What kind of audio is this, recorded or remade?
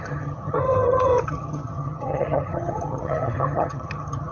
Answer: remade